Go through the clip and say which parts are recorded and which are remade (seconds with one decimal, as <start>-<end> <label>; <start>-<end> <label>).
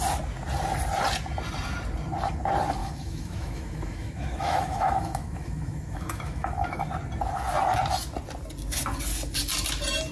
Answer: 0.0-2.8 recorded; 2.8-6.9 remade; 6.9-10.1 recorded